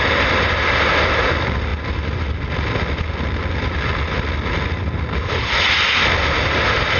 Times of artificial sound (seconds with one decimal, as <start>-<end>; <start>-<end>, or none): none